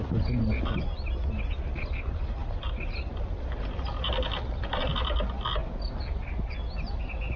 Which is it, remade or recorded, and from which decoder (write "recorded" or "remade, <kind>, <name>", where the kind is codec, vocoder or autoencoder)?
recorded